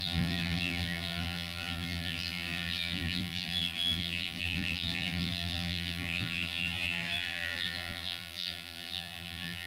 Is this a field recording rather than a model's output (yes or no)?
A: no